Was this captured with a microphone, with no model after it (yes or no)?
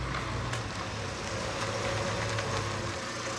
yes